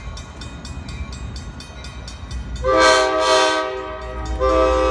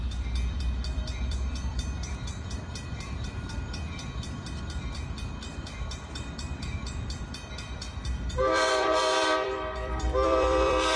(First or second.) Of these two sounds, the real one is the first